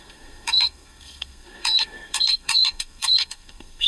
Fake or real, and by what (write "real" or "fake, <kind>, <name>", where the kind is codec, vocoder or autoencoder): fake, codec, SNAC